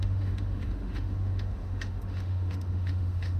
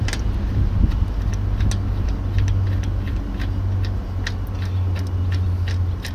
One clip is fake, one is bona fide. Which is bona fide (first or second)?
second